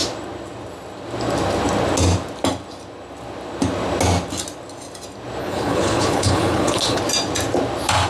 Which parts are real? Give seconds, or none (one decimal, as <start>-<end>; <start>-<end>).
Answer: 0.0-5.4; 7.0-8.1